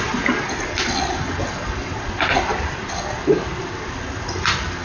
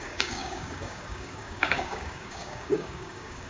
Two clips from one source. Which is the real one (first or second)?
first